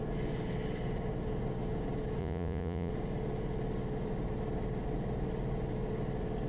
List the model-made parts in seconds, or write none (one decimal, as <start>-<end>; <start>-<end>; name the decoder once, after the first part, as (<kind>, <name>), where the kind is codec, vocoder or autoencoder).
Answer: 2.2-2.9 (vocoder, Vocos)